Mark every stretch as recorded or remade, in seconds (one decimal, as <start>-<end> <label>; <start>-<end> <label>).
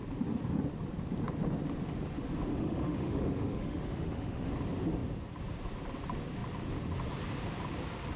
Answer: 0.0-2.5 recorded; 2.5-4.5 remade; 4.5-8.2 recorded